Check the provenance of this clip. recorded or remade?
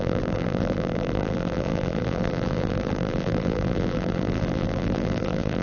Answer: remade